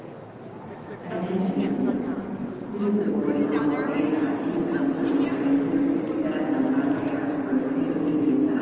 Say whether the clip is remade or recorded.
recorded